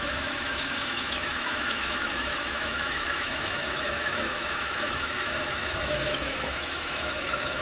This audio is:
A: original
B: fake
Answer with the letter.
B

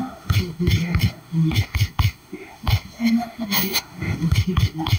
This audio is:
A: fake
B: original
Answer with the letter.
A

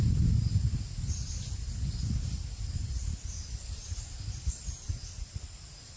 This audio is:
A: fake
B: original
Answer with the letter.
B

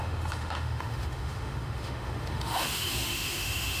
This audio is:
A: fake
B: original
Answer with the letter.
A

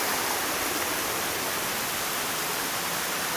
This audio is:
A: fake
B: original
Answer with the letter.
B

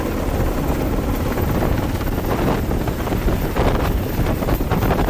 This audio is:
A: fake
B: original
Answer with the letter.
B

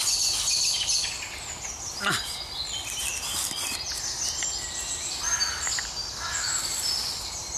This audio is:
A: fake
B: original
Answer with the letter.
B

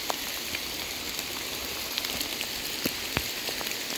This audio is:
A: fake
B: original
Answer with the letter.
B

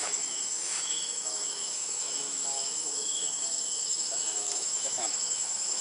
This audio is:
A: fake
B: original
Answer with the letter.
A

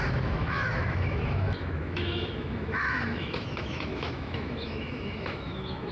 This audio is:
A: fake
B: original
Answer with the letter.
A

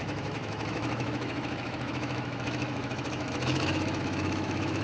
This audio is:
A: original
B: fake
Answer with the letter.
B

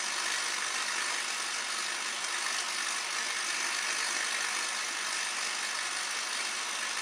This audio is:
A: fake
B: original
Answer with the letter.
B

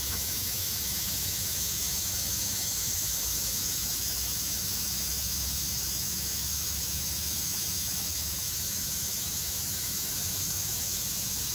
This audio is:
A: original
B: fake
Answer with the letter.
B